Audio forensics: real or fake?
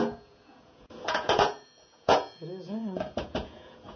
fake